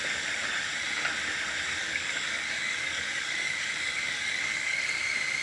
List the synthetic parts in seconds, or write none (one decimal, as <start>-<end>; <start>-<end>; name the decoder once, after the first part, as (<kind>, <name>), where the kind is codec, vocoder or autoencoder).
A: 1.8-5.0 (codec, DAC)